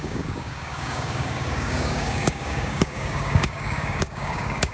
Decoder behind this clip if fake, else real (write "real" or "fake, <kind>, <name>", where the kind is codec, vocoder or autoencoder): fake, codec, DAC